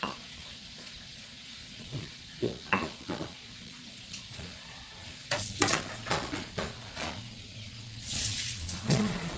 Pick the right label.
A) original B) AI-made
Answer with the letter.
B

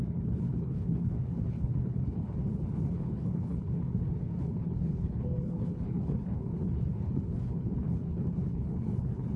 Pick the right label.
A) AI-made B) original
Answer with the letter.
A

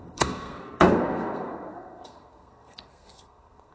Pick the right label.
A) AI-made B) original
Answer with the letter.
A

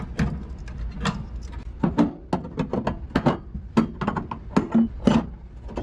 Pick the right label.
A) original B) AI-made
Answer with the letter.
A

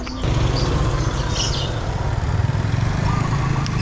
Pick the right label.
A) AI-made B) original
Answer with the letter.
B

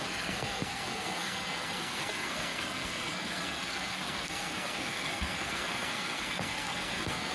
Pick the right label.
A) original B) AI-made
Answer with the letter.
B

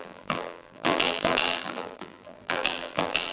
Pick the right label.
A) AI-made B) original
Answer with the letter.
A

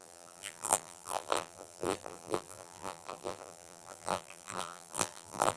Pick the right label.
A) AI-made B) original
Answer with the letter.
A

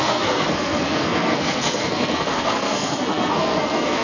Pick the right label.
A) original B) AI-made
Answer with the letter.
B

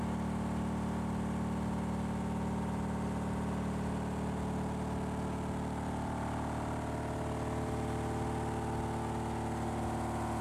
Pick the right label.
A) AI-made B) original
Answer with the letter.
B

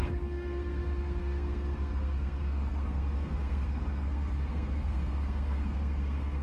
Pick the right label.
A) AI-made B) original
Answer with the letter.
A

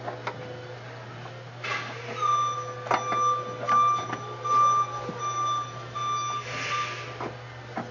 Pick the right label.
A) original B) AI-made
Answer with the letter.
A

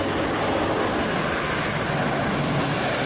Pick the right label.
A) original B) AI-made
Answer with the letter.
A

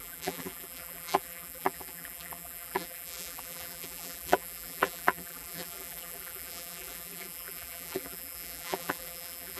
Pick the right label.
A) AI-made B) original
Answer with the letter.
A